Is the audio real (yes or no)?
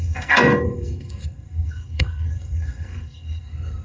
no